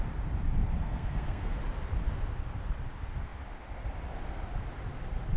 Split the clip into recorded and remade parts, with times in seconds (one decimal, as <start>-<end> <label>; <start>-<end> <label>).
0.0-0.8 recorded; 0.8-1.5 remade; 1.5-5.4 recorded